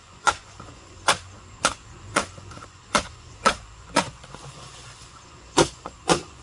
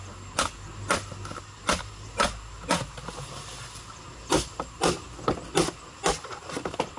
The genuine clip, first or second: second